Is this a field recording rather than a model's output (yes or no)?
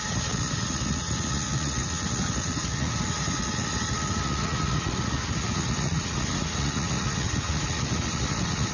no